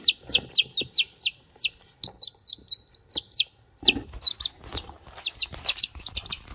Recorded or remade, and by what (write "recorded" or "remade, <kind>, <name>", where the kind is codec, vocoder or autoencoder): remade, vocoder, BigVGAN v2